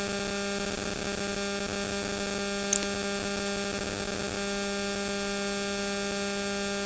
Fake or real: real